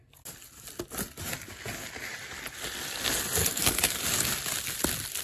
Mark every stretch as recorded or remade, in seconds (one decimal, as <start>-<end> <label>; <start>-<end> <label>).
0.0-3.4 recorded; 3.4-4.0 remade; 4.0-5.2 recorded